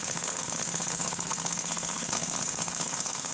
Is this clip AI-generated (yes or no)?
yes